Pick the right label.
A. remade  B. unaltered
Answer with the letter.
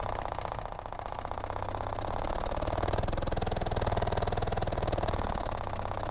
B